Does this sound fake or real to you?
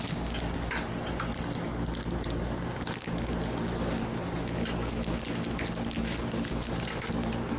real